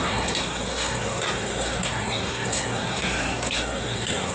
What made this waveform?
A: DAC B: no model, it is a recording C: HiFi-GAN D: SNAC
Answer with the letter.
D